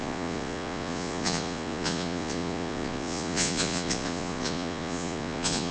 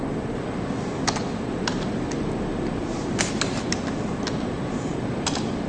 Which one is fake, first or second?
first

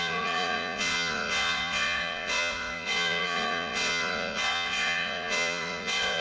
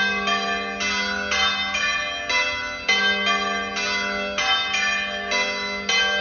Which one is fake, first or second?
first